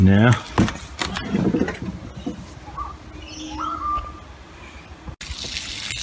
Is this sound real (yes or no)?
yes